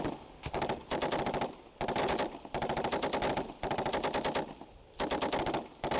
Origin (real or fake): real